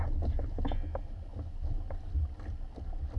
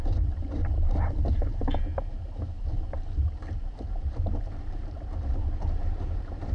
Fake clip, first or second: second